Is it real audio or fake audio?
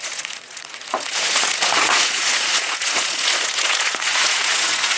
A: fake